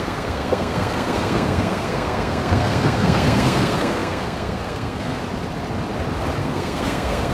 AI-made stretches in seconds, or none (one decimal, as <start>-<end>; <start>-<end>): 0.0-5.2; 6.4-7.3